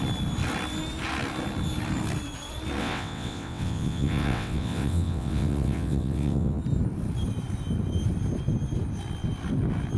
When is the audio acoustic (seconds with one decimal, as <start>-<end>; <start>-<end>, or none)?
0.0-2.8; 6.6-10.0